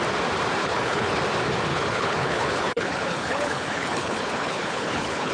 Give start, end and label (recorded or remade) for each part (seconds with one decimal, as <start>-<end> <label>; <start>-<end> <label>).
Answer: 0.0-0.6 recorded; 0.6-1.2 remade; 1.2-1.7 recorded; 1.7-5.3 remade